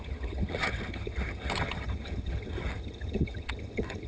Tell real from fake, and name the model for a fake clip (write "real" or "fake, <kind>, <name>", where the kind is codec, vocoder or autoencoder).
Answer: fake, vocoder, HiFi-GAN